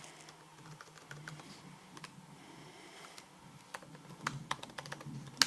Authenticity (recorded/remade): recorded